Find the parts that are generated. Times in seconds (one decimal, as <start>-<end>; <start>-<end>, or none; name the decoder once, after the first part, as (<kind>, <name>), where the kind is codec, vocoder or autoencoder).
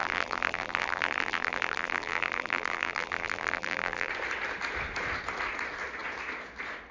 0.0-4.1 (vocoder, BigVGAN v2)